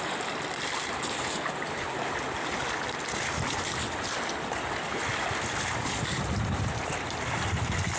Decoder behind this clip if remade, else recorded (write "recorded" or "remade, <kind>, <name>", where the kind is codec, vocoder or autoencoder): recorded